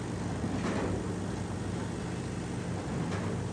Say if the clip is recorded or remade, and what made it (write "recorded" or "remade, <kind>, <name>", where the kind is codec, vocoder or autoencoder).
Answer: recorded